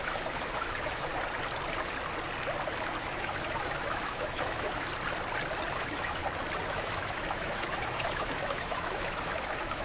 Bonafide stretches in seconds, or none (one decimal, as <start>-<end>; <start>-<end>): 1.1-3.0; 4.9-5.8; 6.2-6.7